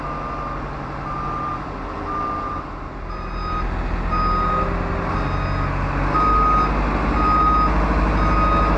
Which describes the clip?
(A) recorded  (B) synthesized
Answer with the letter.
A